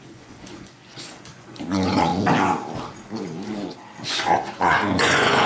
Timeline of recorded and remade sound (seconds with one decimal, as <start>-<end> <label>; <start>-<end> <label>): 0.0-2.1 remade; 2.1-4.1 recorded; 4.1-5.5 remade